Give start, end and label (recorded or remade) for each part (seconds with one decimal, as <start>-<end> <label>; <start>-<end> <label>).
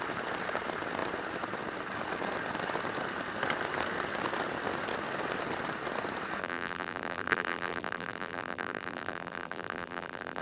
0.0-6.4 recorded; 6.4-10.4 remade